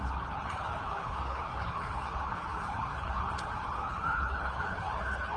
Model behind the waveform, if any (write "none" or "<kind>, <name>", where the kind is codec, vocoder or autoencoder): codec, HILCodec